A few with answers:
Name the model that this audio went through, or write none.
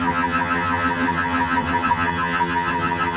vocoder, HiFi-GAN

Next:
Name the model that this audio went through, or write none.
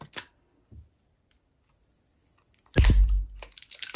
none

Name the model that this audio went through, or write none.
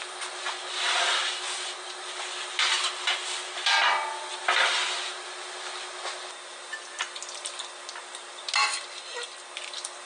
none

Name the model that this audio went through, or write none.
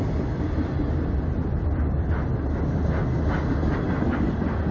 none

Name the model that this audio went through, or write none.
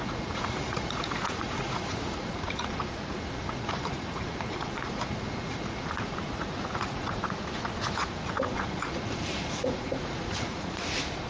vocoder, Vocos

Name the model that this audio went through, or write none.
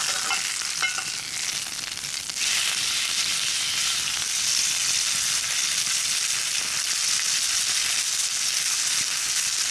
none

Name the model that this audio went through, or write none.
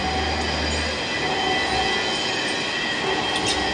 none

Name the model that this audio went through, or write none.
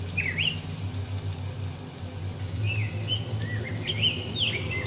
none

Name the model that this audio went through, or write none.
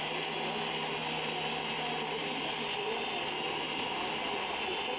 none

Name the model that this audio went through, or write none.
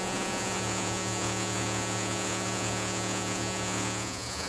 vocoder, Vocos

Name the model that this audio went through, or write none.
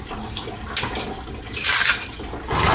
none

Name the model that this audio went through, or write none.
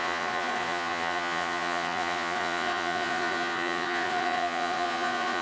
vocoder, Vocos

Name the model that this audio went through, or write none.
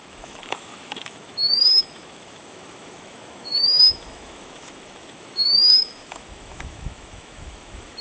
autoencoder, DAC-VAE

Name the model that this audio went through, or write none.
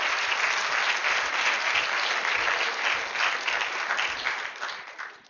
none